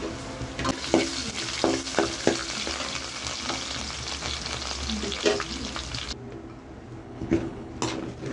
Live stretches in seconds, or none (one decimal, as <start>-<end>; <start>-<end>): 0.0-7.0; 7.7-8.3